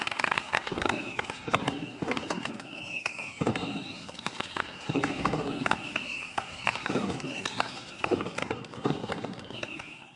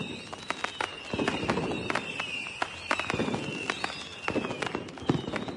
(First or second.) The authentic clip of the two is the second